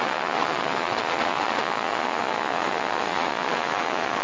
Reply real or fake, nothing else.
fake